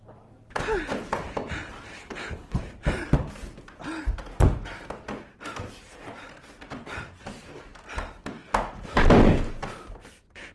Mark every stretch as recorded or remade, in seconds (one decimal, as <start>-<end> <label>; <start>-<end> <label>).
0.0-2.0 recorded; 2.0-2.6 remade; 2.6-10.5 recorded